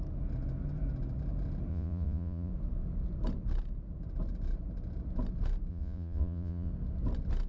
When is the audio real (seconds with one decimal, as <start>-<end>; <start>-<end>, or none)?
0.0-1.7; 2.5-5.7; 6.7-7.5